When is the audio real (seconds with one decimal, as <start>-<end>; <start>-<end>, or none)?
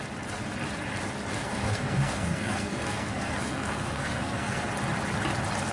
0.0-1.3; 4.7-5.7